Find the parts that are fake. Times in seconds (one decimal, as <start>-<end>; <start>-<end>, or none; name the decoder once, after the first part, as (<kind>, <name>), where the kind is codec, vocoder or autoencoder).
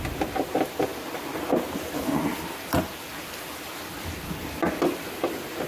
none